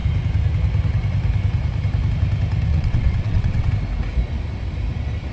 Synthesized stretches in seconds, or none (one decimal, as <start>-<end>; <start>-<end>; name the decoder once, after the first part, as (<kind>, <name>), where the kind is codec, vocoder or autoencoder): 2.7-3.7 (vocoder, WaveNeXt)